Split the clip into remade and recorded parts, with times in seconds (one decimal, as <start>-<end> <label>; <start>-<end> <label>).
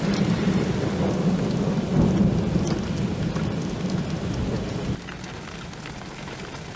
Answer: 0.0-6.8 recorded